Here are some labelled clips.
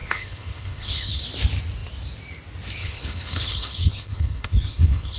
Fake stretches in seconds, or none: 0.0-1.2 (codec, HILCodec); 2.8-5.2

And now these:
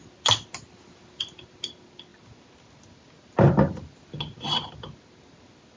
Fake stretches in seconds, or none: none

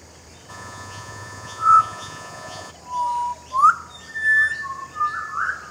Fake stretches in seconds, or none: 0.5-2.7 (vocoder, Vocos)

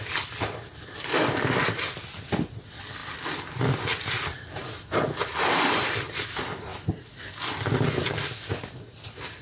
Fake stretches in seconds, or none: 6.7-7.4 (vocoder, BigVGAN v2); 8.5-9.4